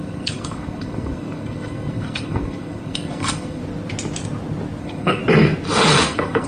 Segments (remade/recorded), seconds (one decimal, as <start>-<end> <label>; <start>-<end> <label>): 0.0-3.6 remade; 3.6-4.8 recorded; 4.8-5.2 remade; 5.2-6.0 recorded; 6.0-6.5 remade